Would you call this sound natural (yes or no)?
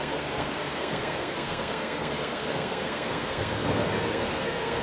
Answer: no